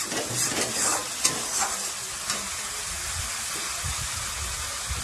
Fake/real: real